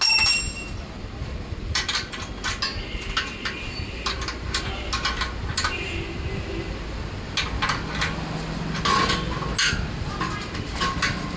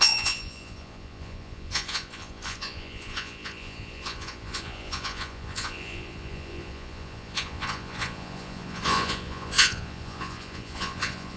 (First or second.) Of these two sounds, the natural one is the first